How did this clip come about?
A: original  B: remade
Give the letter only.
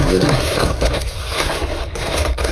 B